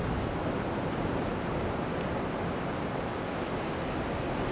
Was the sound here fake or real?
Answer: real